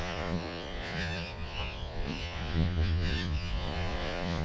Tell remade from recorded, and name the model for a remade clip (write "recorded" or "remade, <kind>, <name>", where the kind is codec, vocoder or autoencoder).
remade, vocoder, Vocos